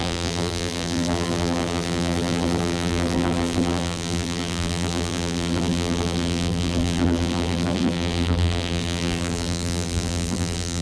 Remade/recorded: remade